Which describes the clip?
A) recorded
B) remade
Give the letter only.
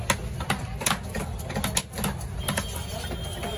A